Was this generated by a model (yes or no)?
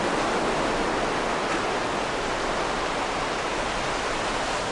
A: no